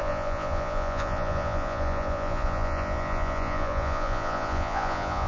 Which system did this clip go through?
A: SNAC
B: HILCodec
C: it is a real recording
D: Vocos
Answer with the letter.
D